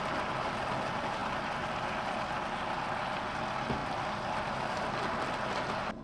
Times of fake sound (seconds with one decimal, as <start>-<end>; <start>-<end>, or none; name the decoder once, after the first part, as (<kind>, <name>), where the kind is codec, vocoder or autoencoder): 1.2-2.3 (vocoder, BigVGAN v2); 3.8-4.4